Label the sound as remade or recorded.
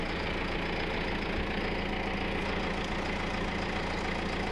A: recorded